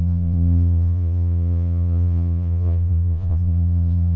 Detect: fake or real fake